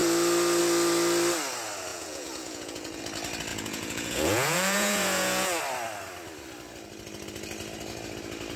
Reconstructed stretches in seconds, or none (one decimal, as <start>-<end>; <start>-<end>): 1.9-3.0; 3.5-5.6